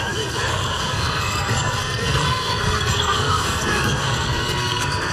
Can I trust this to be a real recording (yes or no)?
no